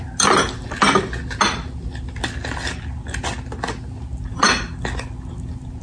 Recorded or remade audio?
recorded